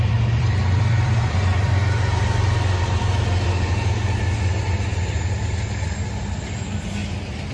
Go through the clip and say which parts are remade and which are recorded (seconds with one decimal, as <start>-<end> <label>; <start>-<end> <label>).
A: 0.0-1.8 remade; 1.8-6.3 recorded; 6.3-7.0 remade; 7.0-7.5 recorded